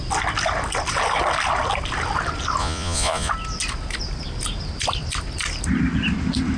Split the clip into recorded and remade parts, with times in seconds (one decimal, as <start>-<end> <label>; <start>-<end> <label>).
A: 0.0-2.6 recorded; 2.6-3.3 remade; 3.3-6.6 recorded